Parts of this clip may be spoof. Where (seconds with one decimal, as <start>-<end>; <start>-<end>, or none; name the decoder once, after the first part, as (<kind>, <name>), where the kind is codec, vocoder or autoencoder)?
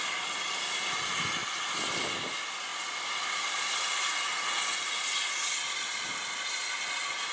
none